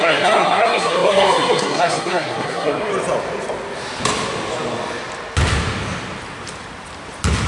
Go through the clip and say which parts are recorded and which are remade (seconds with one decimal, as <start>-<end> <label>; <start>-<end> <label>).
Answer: 0.0-2.9 remade; 2.9-7.5 recorded